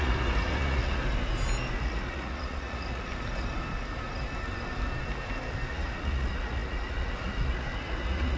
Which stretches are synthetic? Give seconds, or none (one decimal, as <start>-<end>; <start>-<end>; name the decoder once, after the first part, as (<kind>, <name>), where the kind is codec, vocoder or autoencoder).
0.0-1.0 (vocoder, Vocos); 1.8-3.1; 5.7-8.4